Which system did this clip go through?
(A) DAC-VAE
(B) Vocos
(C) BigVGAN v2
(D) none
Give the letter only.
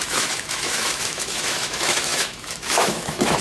A